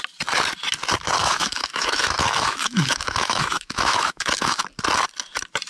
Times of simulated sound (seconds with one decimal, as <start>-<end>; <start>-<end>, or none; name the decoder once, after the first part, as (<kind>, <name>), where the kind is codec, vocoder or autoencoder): 1.2-4.6 (autoencoder, DAC-VAE)